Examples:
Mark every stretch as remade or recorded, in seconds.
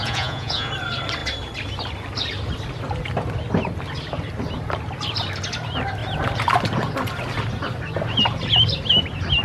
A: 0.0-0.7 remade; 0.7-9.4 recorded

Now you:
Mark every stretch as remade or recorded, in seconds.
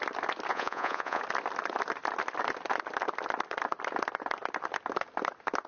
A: 0.0-0.5 recorded; 0.5-1.2 remade; 1.2-5.7 recorded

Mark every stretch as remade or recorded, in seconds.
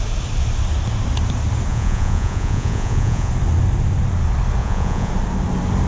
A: 0.0-1.7 recorded; 1.7-3.3 remade; 3.3-4.6 recorded; 4.6-5.1 remade; 5.1-5.9 recorded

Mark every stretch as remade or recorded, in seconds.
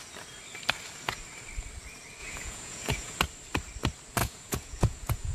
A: 0.0-2.2 recorded; 2.2-3.2 remade; 3.2-4.2 recorded; 4.2-5.3 remade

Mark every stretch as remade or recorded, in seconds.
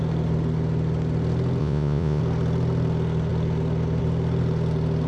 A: 0.0-1.6 recorded; 1.6-2.2 remade; 2.2-5.1 recorded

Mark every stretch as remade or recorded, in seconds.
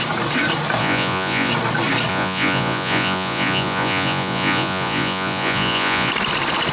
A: 0.0-0.8 recorded; 0.8-1.5 remade; 1.5-2.1 recorded; 2.1-6.1 remade; 6.1-6.7 recorded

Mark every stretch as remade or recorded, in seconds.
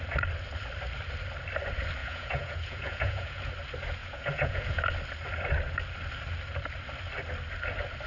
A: 0.0-2.0 recorded; 2.0-3.5 remade; 3.5-4.0 recorded; 4.0-4.8 remade; 4.8-8.1 recorded